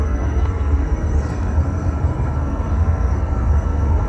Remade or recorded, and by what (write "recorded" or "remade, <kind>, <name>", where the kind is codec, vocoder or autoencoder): remade, codec, SNAC